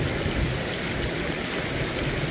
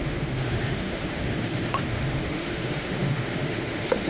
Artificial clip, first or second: second